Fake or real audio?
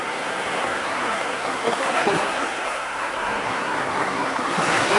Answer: fake